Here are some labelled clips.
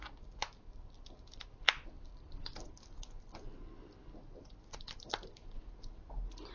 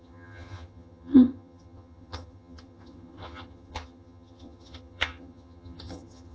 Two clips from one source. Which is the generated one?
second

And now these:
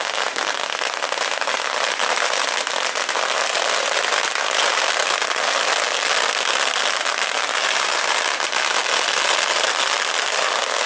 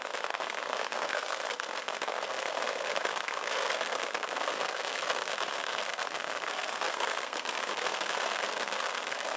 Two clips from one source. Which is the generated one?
second